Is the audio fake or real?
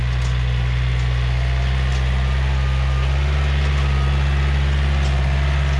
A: real